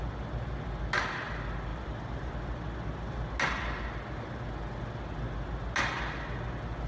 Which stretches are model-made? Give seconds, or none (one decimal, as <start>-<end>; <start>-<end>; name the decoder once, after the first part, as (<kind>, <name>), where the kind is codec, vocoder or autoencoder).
1.7-2.3 (vocoder, BigVGAN v2)

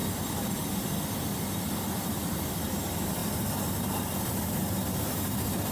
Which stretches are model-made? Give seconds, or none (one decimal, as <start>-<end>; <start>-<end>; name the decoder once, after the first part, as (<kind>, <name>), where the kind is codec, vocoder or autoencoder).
0.0-2.7 (vocoder, BigVGAN v2); 3.2-5.7

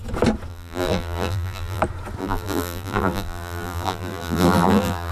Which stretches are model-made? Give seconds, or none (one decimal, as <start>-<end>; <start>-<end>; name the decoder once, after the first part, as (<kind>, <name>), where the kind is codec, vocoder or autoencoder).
0.5-1.8 (vocoder, BigVGAN v2); 2.2-5.1

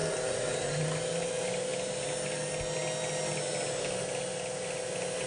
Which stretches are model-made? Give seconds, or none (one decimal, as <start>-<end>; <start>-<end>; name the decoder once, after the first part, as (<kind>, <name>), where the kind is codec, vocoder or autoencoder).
0.0-0.8 (vocoder, BigVGAN v2)

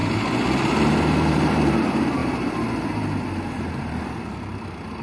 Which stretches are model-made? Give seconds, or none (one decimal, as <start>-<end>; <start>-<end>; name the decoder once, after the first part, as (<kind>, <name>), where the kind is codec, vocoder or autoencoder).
0.0-5.0 (vocoder, BigVGAN v2)

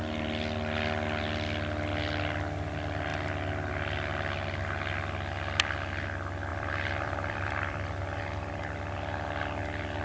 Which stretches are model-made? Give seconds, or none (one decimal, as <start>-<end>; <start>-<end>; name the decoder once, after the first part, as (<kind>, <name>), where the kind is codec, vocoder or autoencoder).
6.5-8.2 (vocoder, BigVGAN v2)

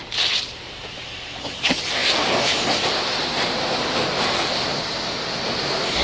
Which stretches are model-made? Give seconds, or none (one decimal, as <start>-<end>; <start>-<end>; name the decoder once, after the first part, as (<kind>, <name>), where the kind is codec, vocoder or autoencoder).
0.0-6.0 (vocoder, BigVGAN v2)

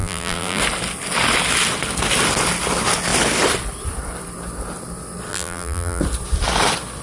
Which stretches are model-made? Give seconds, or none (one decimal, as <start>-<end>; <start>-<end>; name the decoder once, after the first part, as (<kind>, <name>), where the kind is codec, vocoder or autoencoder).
0.0-0.6 (vocoder, BigVGAN v2); 5.3-6.0